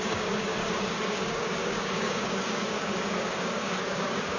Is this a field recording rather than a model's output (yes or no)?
no